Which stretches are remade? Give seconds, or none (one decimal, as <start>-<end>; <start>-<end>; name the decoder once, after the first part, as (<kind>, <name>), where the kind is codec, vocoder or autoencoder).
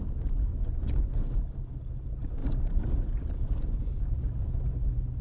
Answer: 0.5-1.3 (vocoder, Vocos)